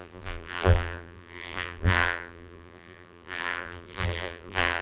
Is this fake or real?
fake